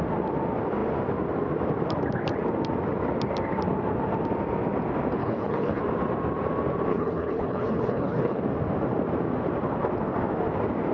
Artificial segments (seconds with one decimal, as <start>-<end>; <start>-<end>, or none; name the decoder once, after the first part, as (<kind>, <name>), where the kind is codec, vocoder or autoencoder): 5.2-5.8 (codec, HILCodec); 6.9-8.4